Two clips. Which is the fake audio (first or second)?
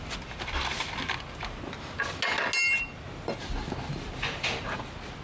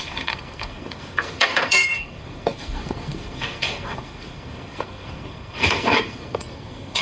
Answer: second